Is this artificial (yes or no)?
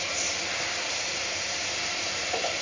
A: no